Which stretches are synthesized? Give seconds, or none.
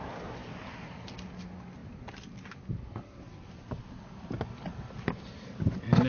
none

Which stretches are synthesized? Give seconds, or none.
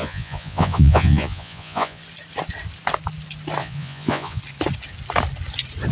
0.0-2.0; 3.6-4.4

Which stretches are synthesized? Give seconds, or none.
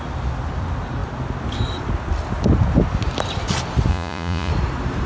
3.9-4.5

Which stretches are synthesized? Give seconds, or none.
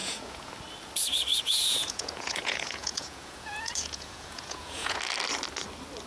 0.0-0.5; 1.3-5.0